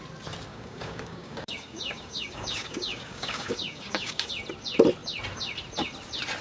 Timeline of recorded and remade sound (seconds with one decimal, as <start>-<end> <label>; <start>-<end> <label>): 0.0-0.5 recorded; 0.5-4.3 remade; 4.3-6.4 recorded